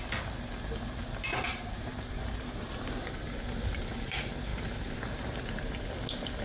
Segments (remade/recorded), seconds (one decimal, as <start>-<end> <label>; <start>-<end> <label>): 0.0-1.5 recorded; 1.5-2.7 remade; 2.7-4.5 recorded; 4.5-5.5 remade; 5.5-6.4 recorded